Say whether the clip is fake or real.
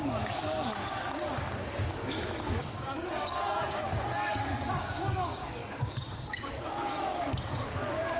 fake